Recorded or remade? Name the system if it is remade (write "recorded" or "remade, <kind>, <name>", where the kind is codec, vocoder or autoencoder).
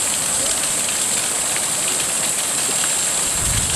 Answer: recorded